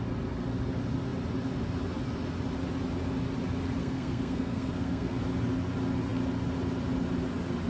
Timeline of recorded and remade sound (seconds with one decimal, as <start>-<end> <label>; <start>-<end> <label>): 0.0-3.8 recorded; 3.8-5.2 remade; 5.2-7.7 recorded